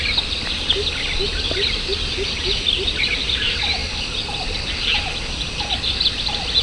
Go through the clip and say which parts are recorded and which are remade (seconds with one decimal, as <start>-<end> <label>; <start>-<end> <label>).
0.0-6.6 recorded